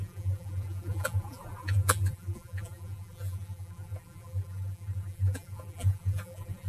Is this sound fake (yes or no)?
yes